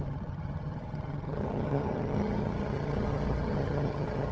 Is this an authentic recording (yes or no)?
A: no